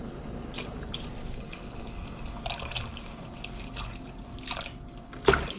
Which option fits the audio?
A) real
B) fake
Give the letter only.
A